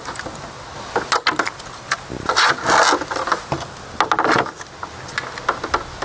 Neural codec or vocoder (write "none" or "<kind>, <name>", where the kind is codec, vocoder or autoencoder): none